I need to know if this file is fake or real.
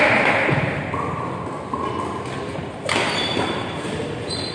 real